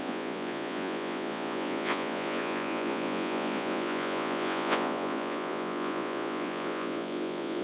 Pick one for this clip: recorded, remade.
remade